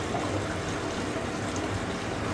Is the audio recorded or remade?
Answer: recorded